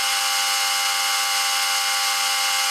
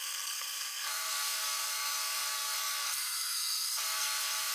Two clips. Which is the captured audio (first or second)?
first